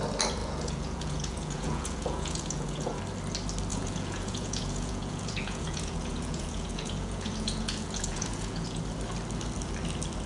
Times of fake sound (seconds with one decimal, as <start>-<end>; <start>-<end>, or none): 0.4-3.0; 3.7-8.8